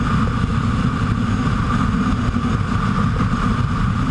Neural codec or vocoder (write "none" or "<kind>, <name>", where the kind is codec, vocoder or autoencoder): none